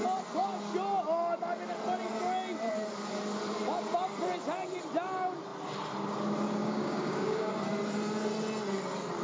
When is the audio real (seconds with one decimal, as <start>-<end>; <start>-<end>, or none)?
0.0-6.6; 7.5-9.2